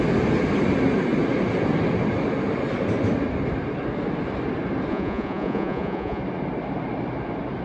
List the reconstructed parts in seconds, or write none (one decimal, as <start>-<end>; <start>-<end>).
4.9-6.2